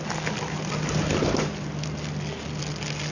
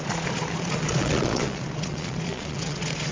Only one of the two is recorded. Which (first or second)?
first